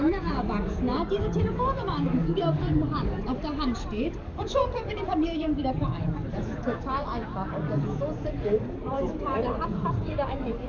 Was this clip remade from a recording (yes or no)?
yes